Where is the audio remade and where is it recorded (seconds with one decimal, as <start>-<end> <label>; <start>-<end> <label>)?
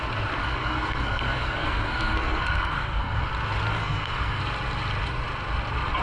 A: 0.0-0.4 recorded; 0.4-3.3 remade; 3.3-3.7 recorded; 3.7-4.4 remade; 4.4-6.0 recorded